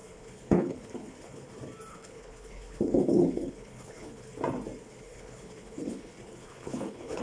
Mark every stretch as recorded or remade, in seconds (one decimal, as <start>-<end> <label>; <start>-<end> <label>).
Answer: 0.0-1.5 remade; 1.5-1.9 recorded; 1.9-4.2 remade; 4.2-4.8 recorded; 4.8-7.2 remade